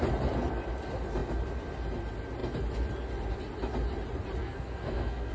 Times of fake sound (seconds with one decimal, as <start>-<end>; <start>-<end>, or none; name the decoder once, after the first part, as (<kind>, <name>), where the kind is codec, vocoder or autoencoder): 4.4-5.3 (codec, SNAC)